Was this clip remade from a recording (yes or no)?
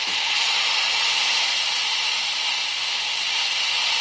no